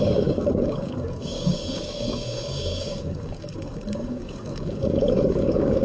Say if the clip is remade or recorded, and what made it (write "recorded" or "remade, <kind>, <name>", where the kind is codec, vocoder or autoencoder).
remade, codec, DAC